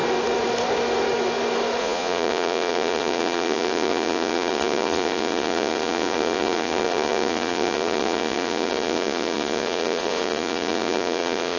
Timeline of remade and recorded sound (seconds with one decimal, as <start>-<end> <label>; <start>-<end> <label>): 0.0-1.8 recorded; 1.8-11.6 remade